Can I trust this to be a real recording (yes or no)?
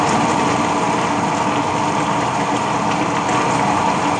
yes